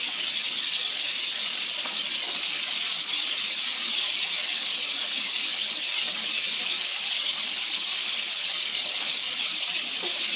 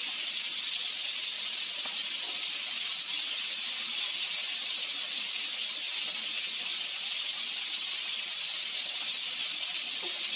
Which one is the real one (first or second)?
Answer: second